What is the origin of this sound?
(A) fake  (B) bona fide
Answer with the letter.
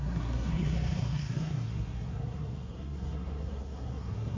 A